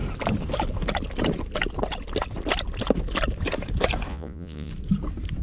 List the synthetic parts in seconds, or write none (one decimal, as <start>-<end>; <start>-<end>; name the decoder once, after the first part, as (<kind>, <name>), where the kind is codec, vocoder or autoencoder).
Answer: 4.1-4.7 (vocoder, Vocos)